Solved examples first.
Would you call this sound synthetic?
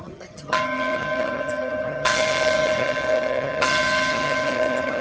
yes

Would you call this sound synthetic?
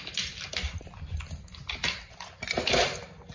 no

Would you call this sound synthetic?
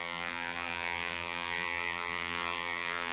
yes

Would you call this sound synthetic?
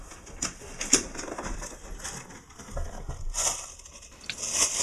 no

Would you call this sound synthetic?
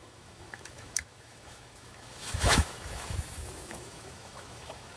yes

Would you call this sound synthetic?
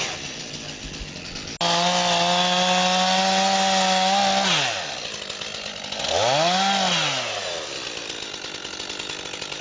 no